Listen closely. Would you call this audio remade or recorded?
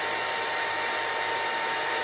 recorded